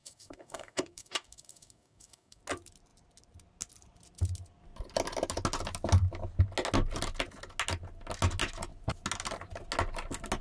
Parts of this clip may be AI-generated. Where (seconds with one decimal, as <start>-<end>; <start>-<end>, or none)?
0.0-2.4